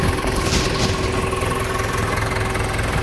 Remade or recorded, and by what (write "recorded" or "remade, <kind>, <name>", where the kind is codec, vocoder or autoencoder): recorded